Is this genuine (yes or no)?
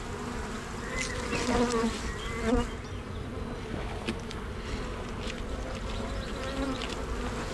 yes